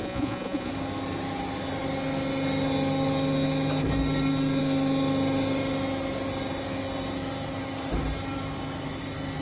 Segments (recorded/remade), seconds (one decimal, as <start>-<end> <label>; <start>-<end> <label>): 0.0-0.7 remade; 0.7-9.4 recorded